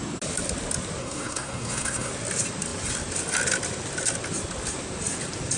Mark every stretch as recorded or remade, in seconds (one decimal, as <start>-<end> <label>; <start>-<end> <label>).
0.0-1.0 recorded; 1.0-2.1 remade; 2.1-5.6 recorded

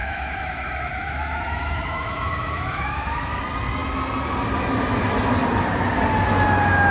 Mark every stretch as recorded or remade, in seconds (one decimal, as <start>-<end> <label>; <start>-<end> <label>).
0.0-3.4 remade; 3.4-6.9 recorded

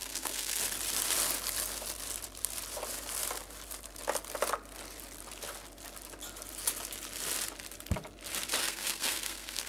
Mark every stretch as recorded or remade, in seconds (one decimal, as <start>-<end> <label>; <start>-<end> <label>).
0.0-0.6 remade; 0.6-8.6 recorded; 8.6-9.7 remade

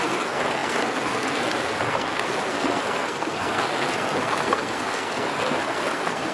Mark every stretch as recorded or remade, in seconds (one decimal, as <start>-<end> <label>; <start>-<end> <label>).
0.0-6.3 remade

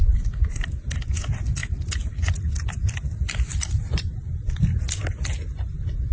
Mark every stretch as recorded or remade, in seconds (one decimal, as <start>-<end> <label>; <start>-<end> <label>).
0.0-1.6 recorded; 1.6-4.3 remade; 4.3-6.1 recorded